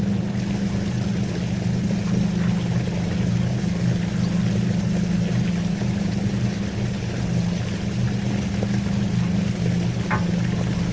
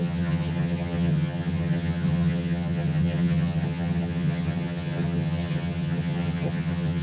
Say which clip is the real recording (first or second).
first